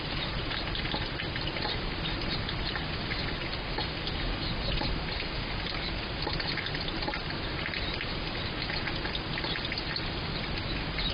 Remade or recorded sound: recorded